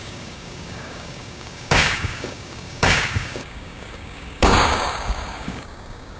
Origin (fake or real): fake